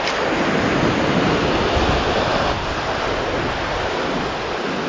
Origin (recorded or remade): recorded